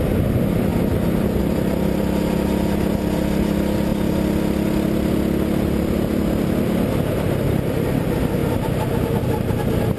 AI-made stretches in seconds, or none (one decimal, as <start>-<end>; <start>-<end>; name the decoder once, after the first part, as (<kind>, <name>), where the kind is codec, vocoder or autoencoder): 0.7-1.4 (vocoder, BigVGAN v2); 8.4-9.2